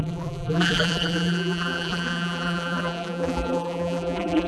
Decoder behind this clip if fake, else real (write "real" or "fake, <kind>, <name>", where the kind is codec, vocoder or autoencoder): fake, vocoder, BigVGAN v2